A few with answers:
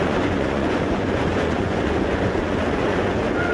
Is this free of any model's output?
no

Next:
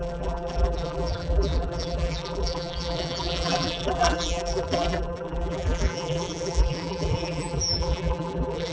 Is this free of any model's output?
no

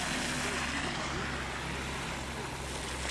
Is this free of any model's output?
yes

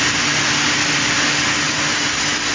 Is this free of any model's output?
yes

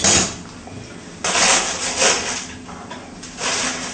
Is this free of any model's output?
yes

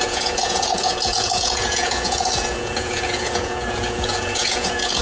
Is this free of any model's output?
no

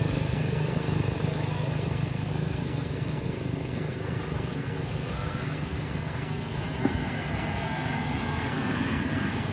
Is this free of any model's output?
no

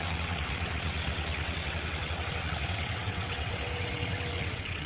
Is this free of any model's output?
no